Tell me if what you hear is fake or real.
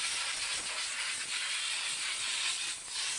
real